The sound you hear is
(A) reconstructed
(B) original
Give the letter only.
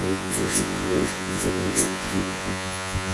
A